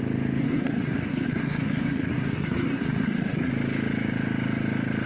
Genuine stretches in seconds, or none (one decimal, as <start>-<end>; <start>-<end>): 0.0-0.4; 3.5-5.1